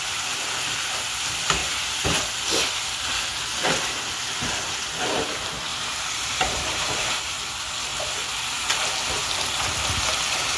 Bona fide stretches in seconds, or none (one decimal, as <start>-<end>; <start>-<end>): 0.0-1.6; 2.2-5.7; 7.3-10.6